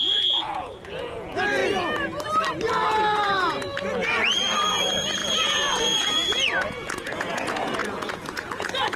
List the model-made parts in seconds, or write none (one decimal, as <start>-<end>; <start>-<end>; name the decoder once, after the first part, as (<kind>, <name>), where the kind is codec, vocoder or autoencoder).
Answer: 0.0-1.6 (vocoder, Vocos); 2.7-9.0